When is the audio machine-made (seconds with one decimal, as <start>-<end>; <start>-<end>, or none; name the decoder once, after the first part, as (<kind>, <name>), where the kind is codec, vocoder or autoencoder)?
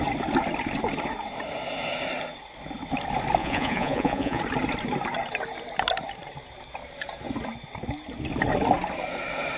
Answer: 3.4-4.4 (vocoder, Vocos)